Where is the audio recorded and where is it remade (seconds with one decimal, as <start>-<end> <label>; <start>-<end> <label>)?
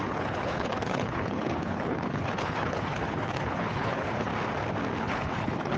0.0-4.3 remade; 4.3-5.0 recorded; 5.0-5.8 remade